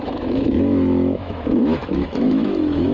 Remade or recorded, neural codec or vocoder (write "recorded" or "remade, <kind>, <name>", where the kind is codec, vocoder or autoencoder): remade, autoencoder, DAC-VAE